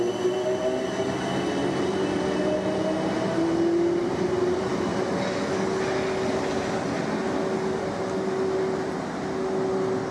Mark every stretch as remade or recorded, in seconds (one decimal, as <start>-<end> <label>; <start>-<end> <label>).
0.0-1.6 recorded; 1.6-2.3 remade; 2.3-4.9 recorded; 4.9-5.4 remade; 5.4-10.1 recorded